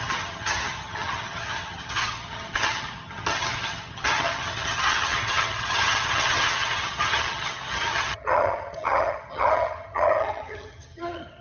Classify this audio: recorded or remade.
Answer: remade